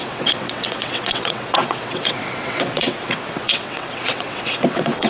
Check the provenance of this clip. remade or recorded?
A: remade